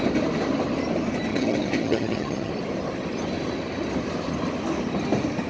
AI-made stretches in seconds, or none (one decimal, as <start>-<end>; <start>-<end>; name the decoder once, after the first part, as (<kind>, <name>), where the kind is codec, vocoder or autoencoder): 1.3-2.5 (vocoder, HiFi-GAN)